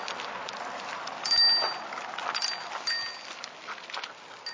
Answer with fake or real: real